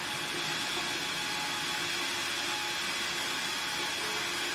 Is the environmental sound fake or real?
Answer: real